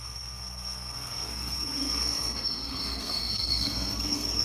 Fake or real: fake